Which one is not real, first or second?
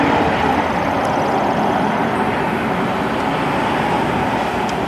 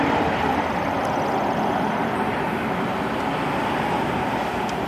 second